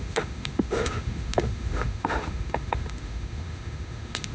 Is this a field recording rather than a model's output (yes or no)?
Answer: no